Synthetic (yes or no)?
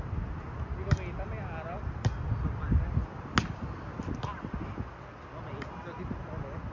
no